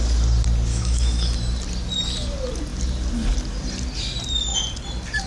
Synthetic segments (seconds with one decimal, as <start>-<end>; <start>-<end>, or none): 0.7-1.3